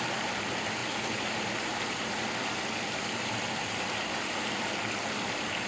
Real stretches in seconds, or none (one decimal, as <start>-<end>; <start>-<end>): 0.0-2.5; 4.8-5.7